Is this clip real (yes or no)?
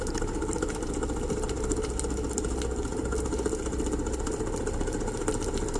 yes